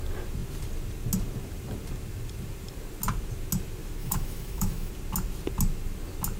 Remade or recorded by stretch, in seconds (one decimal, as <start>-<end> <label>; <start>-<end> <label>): 0.0-4.0 recorded; 4.0-4.9 remade; 4.9-6.4 recorded